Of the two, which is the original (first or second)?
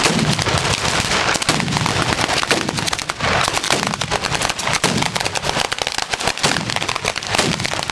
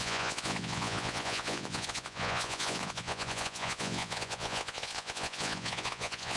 first